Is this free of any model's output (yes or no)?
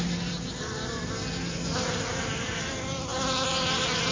yes